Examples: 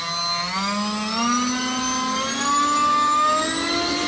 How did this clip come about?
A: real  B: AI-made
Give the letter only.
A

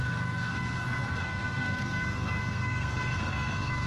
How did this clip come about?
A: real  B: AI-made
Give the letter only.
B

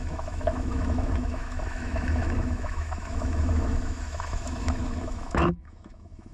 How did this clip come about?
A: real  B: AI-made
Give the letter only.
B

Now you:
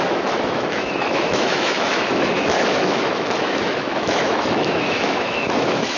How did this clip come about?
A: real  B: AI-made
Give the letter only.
B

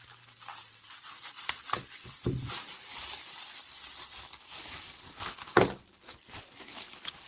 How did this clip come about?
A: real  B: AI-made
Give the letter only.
A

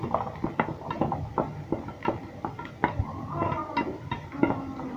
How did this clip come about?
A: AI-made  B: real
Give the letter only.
B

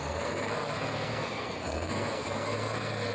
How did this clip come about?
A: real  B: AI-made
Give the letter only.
B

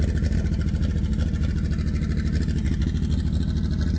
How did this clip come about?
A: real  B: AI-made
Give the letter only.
A